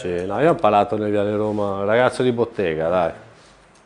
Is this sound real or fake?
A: real